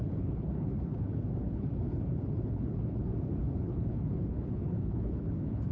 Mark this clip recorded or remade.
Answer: remade